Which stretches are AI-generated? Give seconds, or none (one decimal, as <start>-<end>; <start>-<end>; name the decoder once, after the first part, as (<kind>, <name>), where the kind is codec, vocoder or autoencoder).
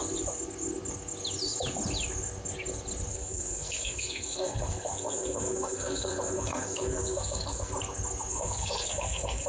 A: 3.1-7.7 (codec, SNAC); 8.3-9.5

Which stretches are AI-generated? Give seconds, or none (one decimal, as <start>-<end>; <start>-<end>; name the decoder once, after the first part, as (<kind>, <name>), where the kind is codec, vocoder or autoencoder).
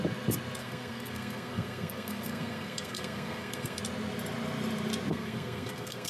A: 0.6-3.8 (codec, SNAC); 5.1-6.1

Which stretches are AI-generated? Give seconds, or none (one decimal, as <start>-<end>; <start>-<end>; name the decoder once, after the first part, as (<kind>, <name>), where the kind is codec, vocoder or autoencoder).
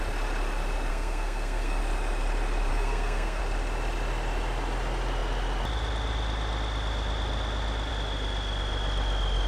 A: 0.9-1.8 (codec, SNAC); 2.7-3.4